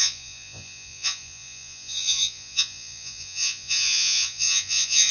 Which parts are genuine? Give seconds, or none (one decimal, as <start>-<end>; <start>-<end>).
none